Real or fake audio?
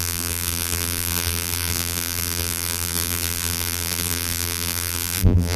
fake